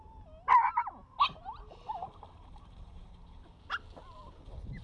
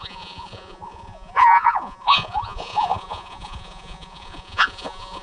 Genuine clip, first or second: first